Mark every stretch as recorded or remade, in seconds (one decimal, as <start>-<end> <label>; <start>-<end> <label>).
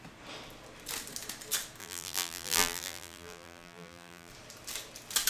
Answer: 0.0-1.8 recorded; 1.8-4.3 remade; 4.3-5.3 recorded